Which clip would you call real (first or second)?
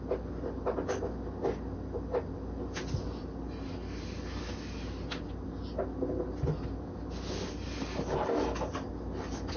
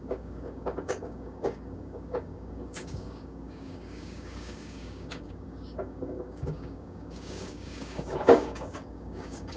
first